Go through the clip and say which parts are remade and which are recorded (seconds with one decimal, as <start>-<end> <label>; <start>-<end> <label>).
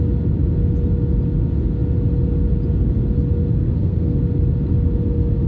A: 0.0-3.6 recorded; 3.6-4.2 remade; 4.2-5.5 recorded